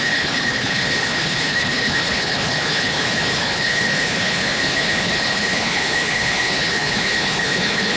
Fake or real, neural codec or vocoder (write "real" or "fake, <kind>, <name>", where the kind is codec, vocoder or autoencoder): fake, codec, HILCodec